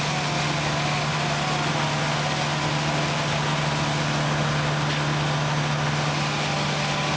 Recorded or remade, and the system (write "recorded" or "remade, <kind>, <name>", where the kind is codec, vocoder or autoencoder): recorded